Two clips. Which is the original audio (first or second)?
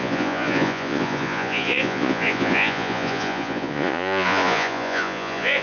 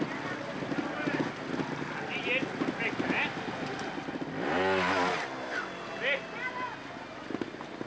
second